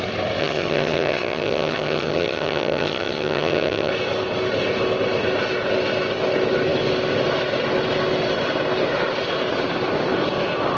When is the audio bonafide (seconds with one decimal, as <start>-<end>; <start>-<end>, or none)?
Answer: 0.0-0.4; 3.9-10.8